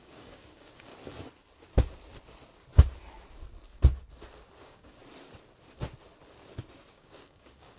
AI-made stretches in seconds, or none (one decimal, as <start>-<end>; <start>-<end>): 0.0-0.9; 4.6-5.0; 6.9-7.8